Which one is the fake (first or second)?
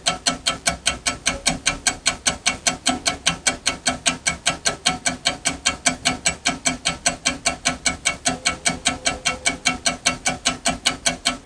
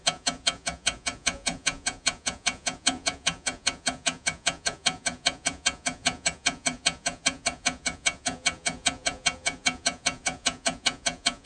second